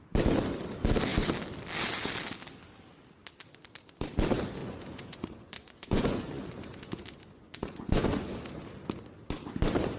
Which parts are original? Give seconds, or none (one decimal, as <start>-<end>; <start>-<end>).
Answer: 0.0-4.6; 8.3-10.0